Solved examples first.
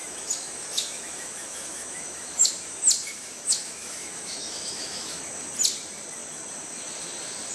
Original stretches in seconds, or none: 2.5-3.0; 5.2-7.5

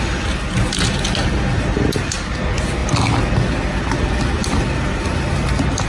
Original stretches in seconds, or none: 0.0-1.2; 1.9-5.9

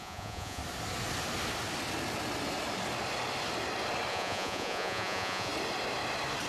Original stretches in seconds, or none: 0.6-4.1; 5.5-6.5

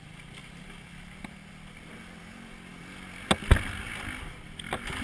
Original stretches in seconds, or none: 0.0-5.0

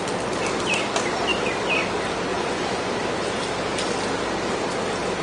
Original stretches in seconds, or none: 0.0-2.3; 2.9-5.2

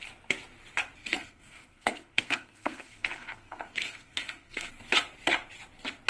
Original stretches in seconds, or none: 0.0-1.0; 4.7-6.1